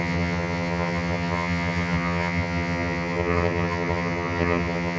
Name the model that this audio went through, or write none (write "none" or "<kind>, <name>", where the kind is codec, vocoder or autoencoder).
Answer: vocoder, HiFi-GAN